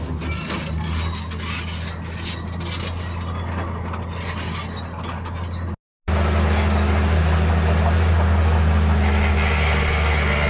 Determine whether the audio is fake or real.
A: real